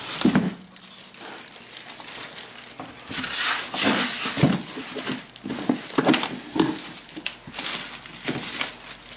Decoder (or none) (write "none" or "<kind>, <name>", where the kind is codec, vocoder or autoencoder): none